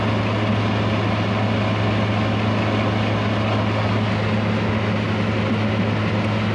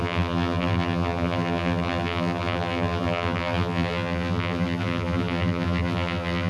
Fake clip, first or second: second